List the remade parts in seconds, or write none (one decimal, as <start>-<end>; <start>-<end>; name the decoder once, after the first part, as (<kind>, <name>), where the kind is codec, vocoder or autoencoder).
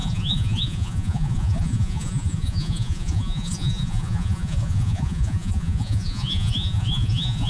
0.0-7.5 (vocoder, Vocos)